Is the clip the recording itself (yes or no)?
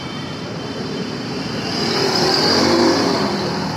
no